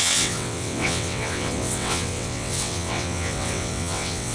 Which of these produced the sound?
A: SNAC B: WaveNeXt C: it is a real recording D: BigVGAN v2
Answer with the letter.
B